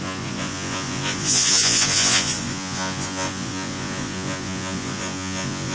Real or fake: fake